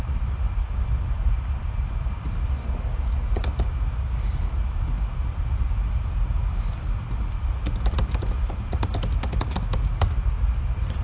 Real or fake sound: real